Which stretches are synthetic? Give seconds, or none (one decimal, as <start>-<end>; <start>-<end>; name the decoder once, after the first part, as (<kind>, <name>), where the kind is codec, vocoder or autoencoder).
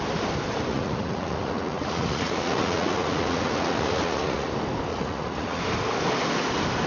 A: 0.7-4.5 (vocoder, Vocos); 4.9-5.6